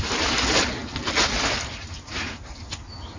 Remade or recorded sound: recorded